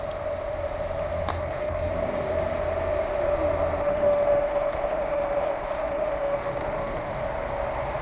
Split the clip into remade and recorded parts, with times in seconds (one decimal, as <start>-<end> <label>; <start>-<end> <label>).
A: 0.0-1.3 recorded; 1.3-1.9 remade; 1.9-3.8 recorded; 3.8-7.1 remade; 7.1-8.0 recorded